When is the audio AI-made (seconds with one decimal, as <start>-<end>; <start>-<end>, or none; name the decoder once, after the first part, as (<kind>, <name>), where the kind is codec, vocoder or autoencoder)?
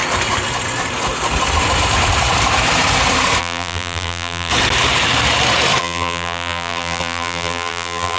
3.4-4.5 (vocoder, BigVGAN v2); 5.8-8.2